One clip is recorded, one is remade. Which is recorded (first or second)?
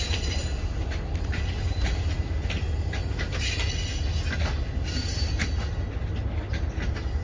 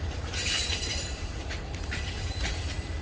first